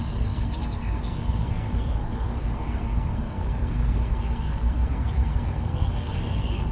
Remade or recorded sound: remade